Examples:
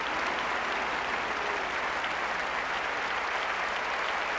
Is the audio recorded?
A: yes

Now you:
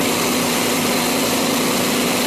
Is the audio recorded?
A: yes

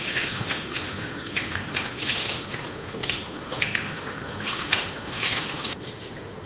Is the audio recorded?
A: no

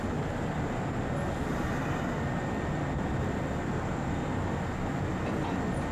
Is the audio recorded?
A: yes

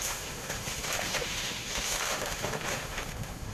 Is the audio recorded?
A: no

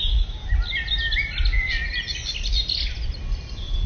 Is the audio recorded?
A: yes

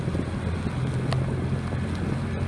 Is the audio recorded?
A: yes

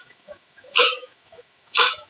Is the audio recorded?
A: no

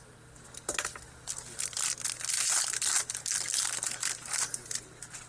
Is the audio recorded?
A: yes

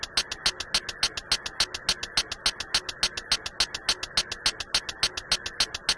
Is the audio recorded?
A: yes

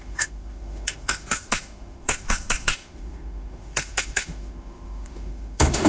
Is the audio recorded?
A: no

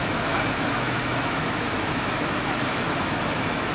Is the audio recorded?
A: no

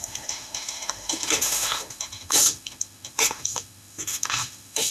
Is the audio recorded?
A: no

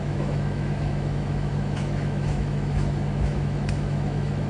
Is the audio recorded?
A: no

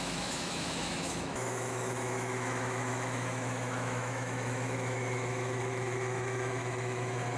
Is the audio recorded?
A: no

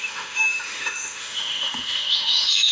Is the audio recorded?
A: no